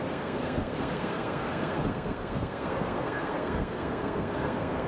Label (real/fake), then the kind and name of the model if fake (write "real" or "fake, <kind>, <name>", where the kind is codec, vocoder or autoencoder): fake, codec, SNAC